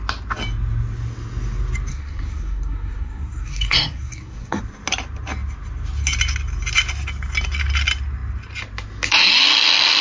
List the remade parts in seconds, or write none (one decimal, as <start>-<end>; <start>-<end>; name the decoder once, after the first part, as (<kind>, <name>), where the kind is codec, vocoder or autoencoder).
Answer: 1.9-4.6 (codec, SNAC)